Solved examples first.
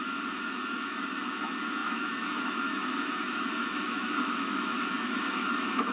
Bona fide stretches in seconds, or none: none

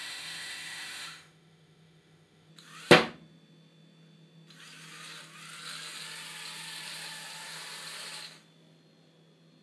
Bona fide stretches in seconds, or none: 2.5-9.6